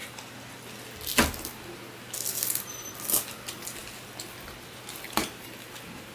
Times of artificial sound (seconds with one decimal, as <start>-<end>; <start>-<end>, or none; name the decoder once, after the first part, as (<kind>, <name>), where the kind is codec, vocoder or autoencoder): none